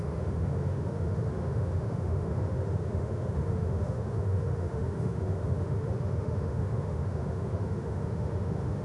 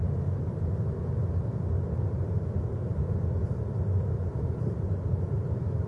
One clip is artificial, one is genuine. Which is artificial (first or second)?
first